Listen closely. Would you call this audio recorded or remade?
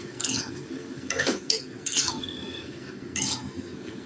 remade